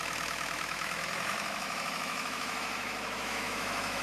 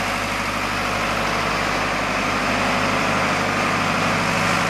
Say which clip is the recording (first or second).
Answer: second